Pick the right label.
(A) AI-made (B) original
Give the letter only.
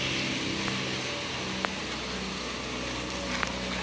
B